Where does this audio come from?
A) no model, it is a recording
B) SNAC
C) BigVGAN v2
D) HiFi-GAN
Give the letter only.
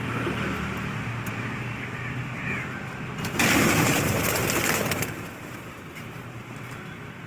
A